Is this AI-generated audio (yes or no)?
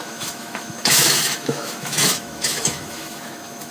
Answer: yes